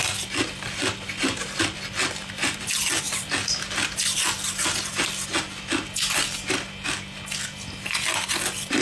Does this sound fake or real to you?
real